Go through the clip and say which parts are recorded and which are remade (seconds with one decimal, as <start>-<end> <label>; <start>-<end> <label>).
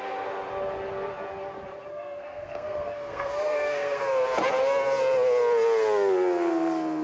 0.0-1.9 recorded; 1.9-4.0 remade; 4.0-7.0 recorded